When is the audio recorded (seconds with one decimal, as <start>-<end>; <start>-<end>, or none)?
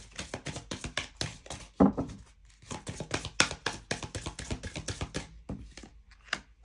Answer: 0.0-1.3; 1.9-6.6